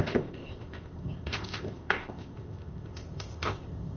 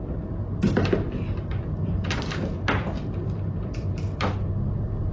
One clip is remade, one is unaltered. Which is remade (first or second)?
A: first